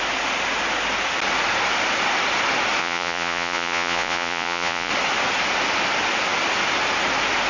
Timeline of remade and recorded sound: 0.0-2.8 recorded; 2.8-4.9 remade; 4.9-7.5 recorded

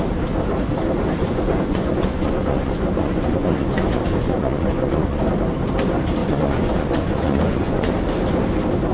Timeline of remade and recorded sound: 0.0-1.2 recorded; 1.2-5.2 remade; 5.2-6.2 recorded; 6.2-7.9 remade; 7.9-8.9 recorded

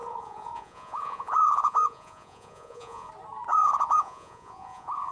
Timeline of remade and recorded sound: 0.0-3.1 remade; 3.1-3.5 recorded; 3.5-5.1 remade

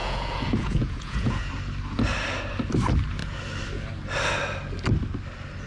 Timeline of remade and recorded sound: 0.0-1.5 remade; 1.5-5.7 recorded

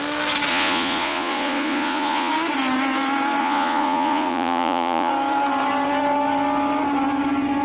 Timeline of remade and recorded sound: 0.0-0.5 recorded; 0.5-2.3 remade; 2.3-3.4 recorded; 3.4-5.1 remade; 5.1-7.6 recorded

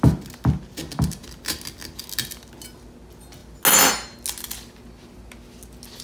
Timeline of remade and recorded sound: 0.0-6.0 recorded

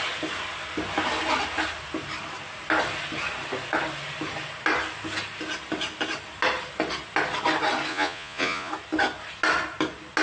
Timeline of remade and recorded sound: 0.0-7.9 recorded; 7.9-8.7 remade; 8.7-10.2 recorded

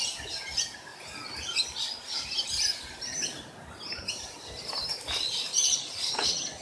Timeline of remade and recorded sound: 0.0-5.5 recorded; 5.5-6.6 remade